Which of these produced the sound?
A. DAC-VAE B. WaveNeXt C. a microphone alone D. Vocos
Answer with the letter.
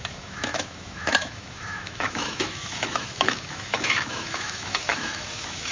A